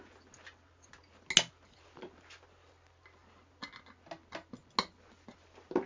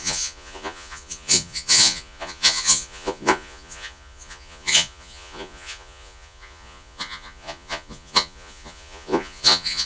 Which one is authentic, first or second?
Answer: first